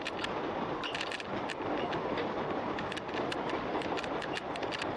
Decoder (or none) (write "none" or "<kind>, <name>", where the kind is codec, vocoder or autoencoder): none